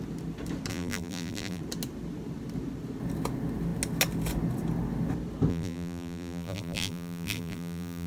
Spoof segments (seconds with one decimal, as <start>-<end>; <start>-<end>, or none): 0.7-1.6; 5.5-8.1